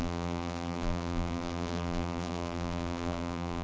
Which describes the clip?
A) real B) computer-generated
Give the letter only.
B